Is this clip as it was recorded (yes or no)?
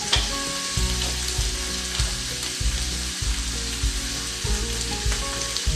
yes